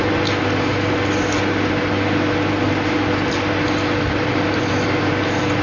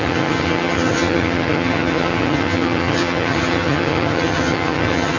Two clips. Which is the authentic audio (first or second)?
first